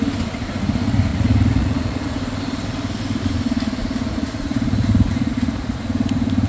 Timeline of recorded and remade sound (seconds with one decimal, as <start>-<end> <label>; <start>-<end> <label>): 0.0-1.1 recorded; 1.1-2.2 remade; 2.2-3.8 recorded; 3.8-5.8 remade; 5.8-6.5 recorded